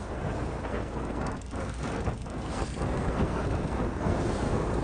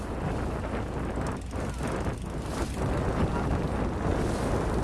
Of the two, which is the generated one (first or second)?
first